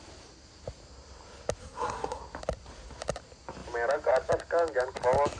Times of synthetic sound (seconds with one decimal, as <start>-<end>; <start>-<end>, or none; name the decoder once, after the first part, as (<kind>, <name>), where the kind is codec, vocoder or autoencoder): 1.6-2.2 (codec, SNAC)